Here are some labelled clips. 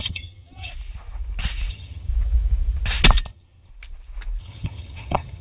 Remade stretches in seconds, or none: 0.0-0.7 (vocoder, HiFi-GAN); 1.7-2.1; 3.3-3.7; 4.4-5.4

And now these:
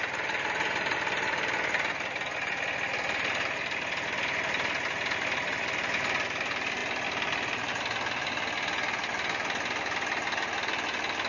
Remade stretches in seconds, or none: none

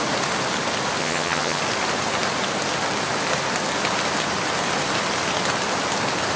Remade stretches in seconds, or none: 1.0-1.6 (vocoder, HiFi-GAN)

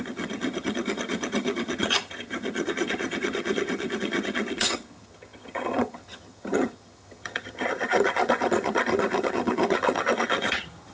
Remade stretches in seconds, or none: 0.0-10.9 (vocoder, HiFi-GAN)

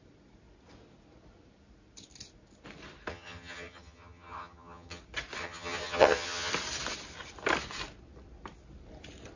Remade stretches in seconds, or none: 3.1-5.0 (vocoder, HiFi-GAN); 5.4-6.5

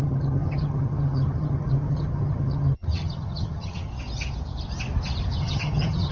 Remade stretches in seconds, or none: 0.0-3.9 (vocoder, HiFi-GAN); 5.4-6.1